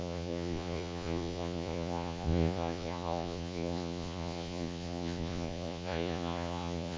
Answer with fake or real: fake